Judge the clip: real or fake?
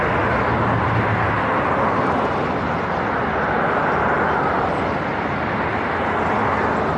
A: real